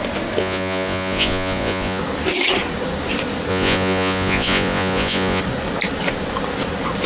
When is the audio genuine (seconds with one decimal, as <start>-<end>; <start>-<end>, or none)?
0.0-0.4; 2.0-3.5; 5.4-7.1